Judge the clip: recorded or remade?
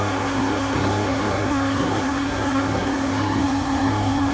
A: remade